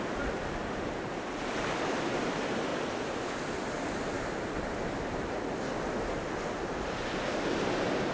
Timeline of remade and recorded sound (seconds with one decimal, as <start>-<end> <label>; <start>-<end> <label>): 0.0-8.1 recorded